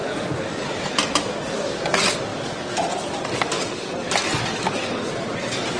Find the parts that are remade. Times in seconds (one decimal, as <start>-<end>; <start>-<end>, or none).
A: none